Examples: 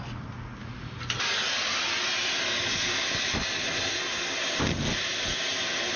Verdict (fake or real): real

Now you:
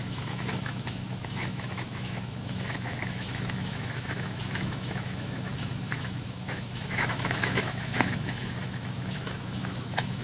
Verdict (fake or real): fake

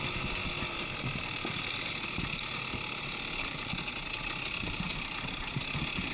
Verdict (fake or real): real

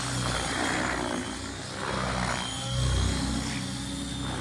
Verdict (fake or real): real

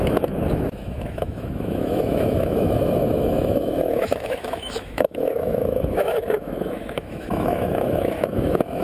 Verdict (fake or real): fake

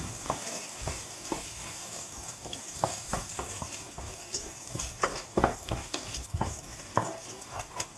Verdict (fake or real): fake